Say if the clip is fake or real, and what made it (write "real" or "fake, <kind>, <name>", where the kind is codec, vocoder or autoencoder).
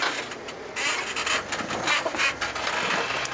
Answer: real